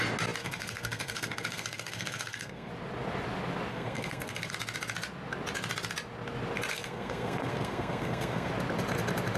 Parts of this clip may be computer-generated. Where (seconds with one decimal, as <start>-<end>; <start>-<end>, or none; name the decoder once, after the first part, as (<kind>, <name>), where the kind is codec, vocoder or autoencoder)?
0.4-2.7 (codec, SNAC); 3.7-4.5; 6.7-8.5